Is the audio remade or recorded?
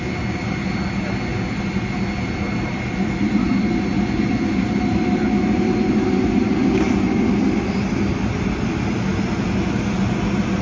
recorded